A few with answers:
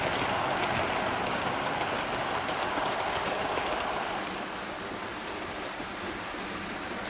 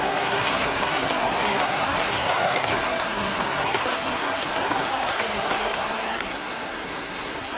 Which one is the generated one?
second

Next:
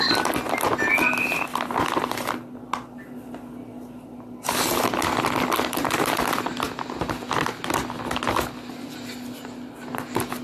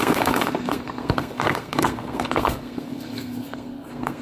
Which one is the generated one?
second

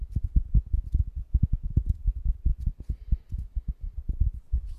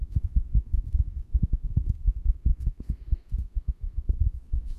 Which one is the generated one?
second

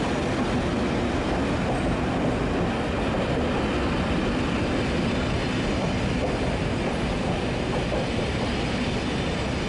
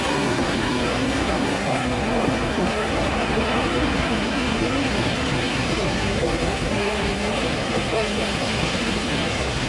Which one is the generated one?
second